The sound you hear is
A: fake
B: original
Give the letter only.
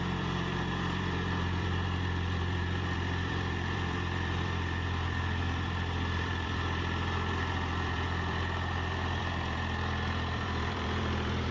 A